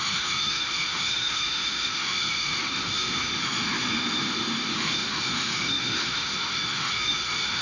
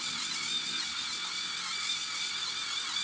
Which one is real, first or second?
second